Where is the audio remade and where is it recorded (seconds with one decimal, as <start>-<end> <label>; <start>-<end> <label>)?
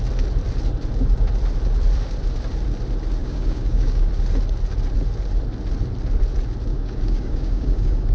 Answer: 0.0-3.2 recorded; 3.2-4.1 remade; 4.1-6.7 recorded; 6.7-8.1 remade